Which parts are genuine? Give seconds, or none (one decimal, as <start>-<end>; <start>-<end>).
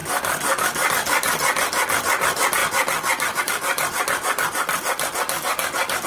0.0-6.1